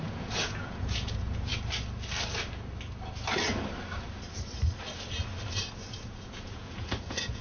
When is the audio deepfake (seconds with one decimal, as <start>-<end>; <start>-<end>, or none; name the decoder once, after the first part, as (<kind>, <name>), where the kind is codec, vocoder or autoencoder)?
0.0-1.5 (vocoder, Vocos); 5.9-7.4